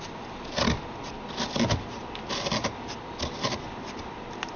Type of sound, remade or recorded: recorded